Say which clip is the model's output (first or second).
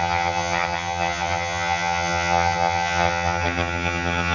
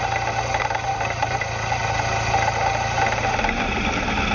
first